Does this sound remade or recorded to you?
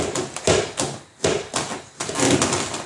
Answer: recorded